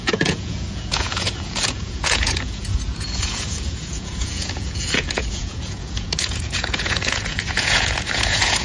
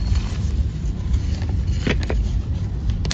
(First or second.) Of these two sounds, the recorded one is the second